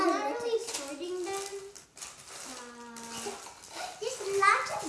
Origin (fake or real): real